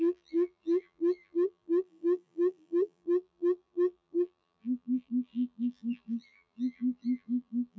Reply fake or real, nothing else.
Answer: fake